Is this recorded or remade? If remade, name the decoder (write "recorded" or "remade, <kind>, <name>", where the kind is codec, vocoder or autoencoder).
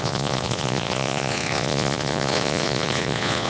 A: remade, vocoder, Vocos